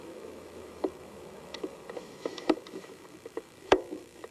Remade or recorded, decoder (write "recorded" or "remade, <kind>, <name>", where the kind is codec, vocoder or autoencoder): remade, autoencoder, DAC-VAE